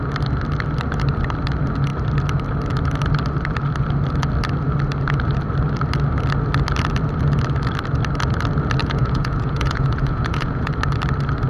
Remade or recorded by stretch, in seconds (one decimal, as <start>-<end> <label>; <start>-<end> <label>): 0.0-8.8 recorded; 8.8-10.7 remade; 10.7-11.5 recorded